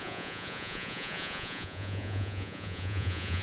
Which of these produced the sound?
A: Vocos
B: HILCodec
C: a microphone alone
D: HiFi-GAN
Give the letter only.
A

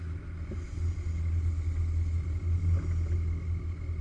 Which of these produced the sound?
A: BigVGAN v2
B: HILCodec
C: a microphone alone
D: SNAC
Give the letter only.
C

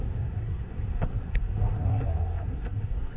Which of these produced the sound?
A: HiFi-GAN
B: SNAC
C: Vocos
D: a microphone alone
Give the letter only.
B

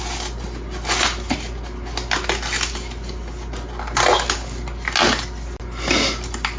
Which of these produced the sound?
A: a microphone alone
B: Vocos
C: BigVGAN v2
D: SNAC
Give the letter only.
A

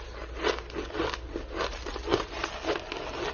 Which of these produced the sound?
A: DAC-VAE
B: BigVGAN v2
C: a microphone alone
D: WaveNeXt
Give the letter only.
C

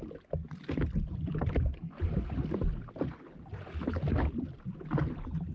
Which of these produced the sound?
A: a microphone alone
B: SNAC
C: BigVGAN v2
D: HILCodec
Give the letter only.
A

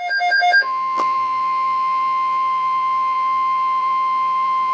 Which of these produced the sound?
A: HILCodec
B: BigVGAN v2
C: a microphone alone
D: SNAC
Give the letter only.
B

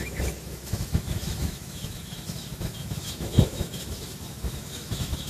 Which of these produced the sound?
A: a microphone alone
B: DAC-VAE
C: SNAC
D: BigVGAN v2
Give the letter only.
B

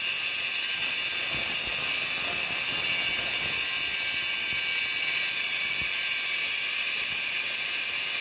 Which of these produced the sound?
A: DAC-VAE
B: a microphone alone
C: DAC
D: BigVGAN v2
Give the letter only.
B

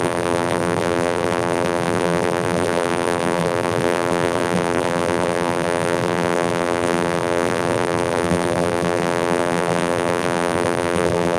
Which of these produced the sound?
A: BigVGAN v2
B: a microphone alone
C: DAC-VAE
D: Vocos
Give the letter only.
A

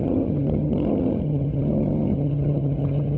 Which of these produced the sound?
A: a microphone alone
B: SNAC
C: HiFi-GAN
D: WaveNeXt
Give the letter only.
C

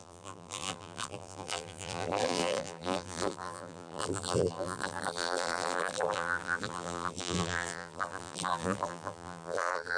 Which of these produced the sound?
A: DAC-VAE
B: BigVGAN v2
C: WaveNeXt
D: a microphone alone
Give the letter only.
B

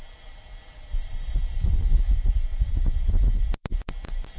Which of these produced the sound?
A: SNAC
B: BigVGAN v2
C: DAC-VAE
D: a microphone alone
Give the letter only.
B